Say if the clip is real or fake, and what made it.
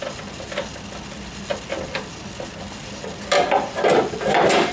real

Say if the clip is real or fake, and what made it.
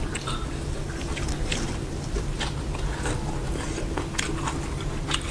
real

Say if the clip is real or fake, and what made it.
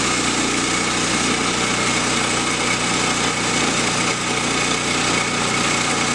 real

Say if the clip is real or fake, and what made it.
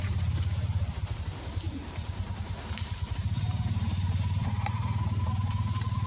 fake, vocoder, BigVGAN v2